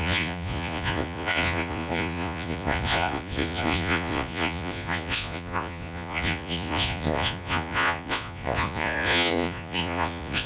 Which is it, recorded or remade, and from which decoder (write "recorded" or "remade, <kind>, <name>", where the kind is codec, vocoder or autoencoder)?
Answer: remade, vocoder, Vocos